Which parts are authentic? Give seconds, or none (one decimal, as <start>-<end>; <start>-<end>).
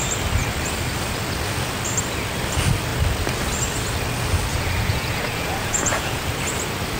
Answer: 0.0-4.5; 6.2-7.0